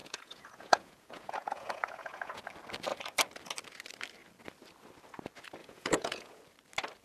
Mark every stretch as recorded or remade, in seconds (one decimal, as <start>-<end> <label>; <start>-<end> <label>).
0.0-2.4 remade; 2.4-5.6 recorded; 5.6-6.4 remade; 6.4-7.0 recorded